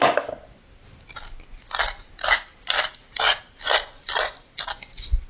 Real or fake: real